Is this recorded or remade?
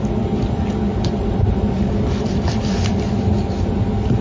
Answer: recorded